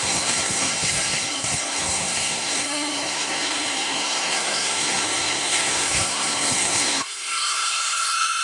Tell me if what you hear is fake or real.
fake